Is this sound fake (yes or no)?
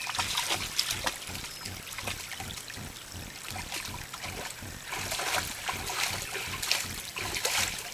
no